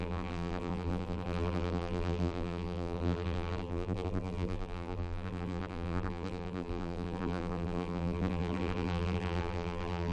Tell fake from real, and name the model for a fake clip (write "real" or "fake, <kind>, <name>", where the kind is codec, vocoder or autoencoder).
fake, vocoder, BigVGAN v2